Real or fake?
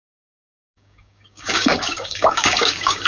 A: fake